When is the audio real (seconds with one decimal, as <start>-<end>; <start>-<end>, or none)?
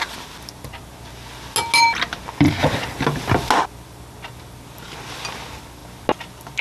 0.0-6.6